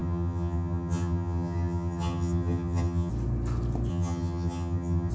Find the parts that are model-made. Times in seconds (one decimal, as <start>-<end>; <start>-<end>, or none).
0.0-3.1; 3.9-5.1